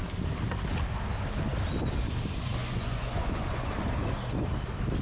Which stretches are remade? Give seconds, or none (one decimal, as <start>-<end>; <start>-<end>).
2.6-3.7